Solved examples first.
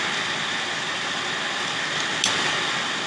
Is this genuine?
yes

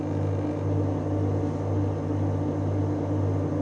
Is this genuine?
yes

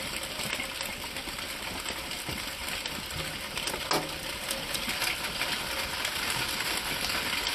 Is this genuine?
yes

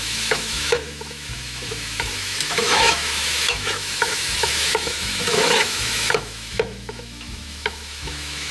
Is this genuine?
no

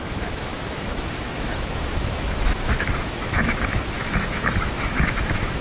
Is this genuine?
no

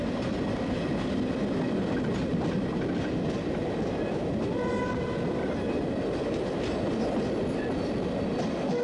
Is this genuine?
yes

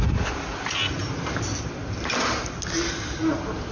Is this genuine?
yes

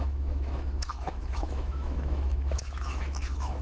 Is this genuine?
no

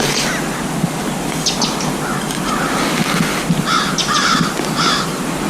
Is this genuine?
yes